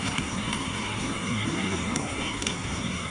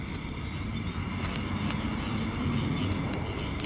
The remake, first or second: first